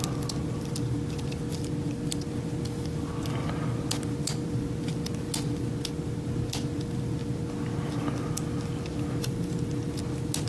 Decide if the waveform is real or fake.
real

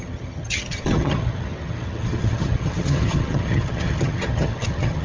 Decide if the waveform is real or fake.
fake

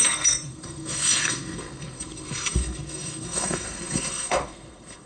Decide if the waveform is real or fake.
fake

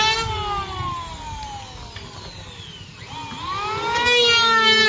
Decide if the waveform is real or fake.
real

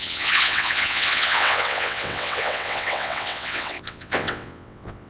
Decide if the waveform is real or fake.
fake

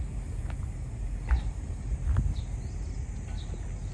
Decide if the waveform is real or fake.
real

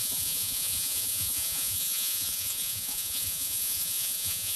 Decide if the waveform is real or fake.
fake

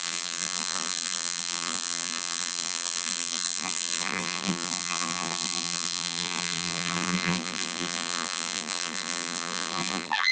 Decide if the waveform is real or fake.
fake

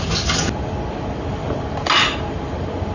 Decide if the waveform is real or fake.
real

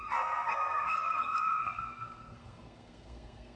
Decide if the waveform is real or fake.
fake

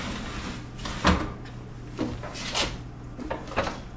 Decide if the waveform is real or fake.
real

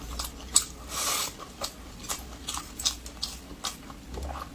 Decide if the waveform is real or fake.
real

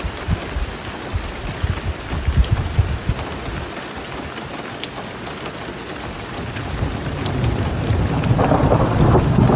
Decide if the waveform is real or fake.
fake